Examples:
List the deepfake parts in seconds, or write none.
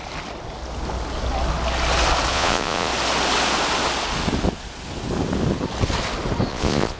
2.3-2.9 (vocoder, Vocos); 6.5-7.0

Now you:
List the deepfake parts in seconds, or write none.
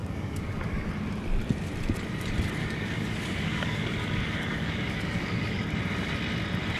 0.0-0.9 (codec, DAC); 2.6-5.6